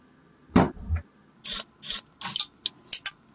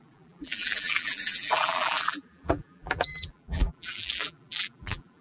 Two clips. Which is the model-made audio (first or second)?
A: second